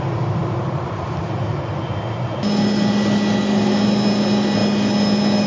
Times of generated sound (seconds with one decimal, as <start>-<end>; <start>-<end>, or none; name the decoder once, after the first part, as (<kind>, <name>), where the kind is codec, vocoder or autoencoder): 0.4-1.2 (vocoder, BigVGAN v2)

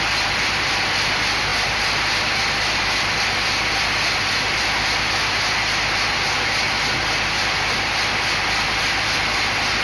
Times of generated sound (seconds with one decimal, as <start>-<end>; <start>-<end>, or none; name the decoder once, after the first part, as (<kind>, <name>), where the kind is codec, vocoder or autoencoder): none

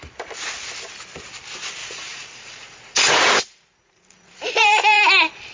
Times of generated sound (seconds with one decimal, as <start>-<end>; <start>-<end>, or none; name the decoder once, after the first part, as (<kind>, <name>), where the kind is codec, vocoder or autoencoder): 1.8-5.0 (vocoder, Vocos)